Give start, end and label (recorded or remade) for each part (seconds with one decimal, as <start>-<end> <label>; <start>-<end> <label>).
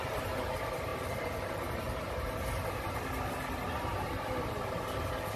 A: 0.0-5.4 recorded